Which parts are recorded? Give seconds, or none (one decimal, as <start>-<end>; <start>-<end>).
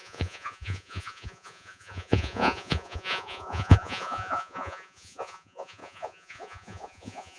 none